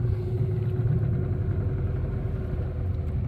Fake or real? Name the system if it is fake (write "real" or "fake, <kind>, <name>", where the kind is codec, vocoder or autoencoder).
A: real